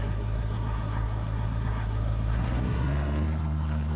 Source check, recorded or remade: remade